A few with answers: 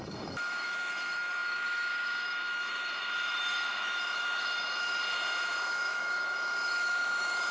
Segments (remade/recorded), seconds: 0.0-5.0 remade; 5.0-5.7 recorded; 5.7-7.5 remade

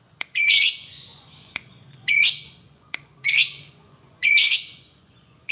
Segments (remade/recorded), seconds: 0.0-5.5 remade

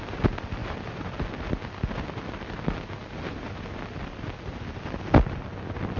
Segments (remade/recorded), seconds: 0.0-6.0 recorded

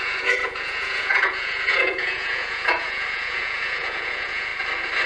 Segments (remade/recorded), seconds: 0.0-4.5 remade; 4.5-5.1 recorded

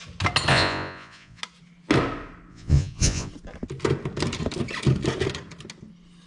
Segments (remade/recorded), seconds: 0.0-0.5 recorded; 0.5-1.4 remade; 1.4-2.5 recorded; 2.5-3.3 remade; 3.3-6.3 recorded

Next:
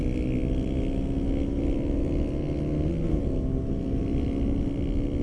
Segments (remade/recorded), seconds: 0.0-5.2 recorded

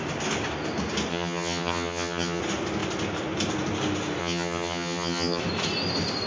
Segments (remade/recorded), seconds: 0.0-1.1 recorded; 1.1-2.4 remade; 2.4-4.2 recorded; 4.2-5.4 remade; 5.4-6.3 recorded